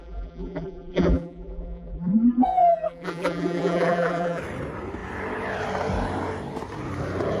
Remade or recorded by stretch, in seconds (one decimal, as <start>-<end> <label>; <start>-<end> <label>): 0.0-4.4 remade; 4.4-7.4 recorded